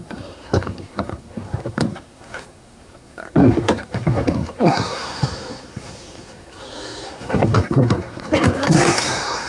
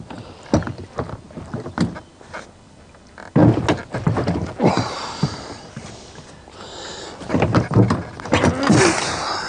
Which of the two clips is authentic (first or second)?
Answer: second